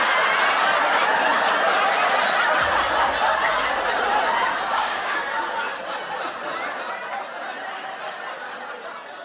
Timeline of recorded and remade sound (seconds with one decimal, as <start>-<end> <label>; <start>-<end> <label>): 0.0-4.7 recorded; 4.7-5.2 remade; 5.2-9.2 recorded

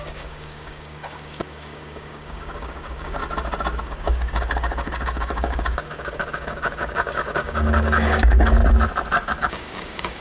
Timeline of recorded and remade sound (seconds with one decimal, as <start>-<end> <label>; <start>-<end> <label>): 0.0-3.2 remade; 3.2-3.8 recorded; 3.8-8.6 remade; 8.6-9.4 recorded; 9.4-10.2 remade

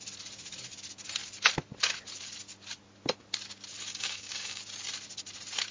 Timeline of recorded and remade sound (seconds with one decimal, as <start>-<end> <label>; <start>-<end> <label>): 0.0-3.9 recorded; 3.9-4.6 remade; 4.6-5.7 recorded